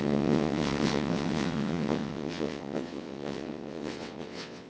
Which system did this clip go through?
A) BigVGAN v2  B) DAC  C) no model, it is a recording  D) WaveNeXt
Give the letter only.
D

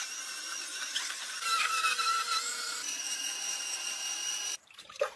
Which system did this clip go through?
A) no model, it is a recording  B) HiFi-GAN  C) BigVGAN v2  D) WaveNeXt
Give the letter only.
C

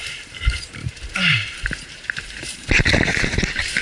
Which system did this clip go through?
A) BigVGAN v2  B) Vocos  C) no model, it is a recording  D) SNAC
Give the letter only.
A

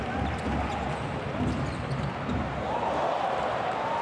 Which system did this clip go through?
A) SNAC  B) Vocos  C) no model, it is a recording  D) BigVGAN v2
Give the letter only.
C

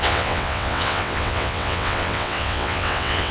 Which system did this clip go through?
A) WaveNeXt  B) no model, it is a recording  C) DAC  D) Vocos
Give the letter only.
A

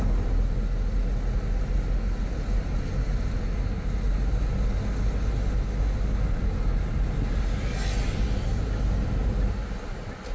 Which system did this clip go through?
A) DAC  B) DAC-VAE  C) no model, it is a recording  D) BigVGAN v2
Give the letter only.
C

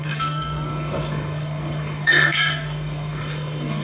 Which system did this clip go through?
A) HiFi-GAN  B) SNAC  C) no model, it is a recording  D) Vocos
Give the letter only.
B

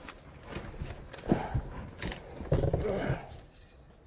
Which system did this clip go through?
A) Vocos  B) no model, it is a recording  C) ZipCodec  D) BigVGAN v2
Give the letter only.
B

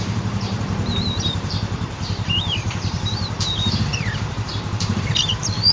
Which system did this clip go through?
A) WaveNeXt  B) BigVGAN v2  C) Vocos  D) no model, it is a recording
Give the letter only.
B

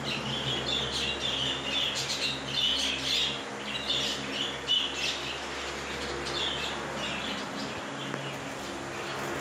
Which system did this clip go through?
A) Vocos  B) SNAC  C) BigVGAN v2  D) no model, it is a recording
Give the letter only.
D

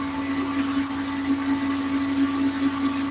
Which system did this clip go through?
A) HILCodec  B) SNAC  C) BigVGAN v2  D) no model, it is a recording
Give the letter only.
D